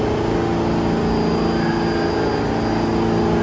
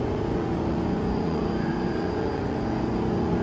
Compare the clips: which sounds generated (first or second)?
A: second